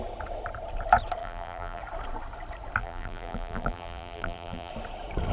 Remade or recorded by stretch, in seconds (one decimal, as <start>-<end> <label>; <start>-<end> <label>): 0.0-1.2 recorded; 1.2-1.8 remade; 1.8-2.8 recorded; 2.8-4.7 remade; 4.7-5.3 recorded